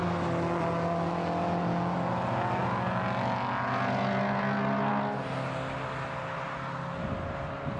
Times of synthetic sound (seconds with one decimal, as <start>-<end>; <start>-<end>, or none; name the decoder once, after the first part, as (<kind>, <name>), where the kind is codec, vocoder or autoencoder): none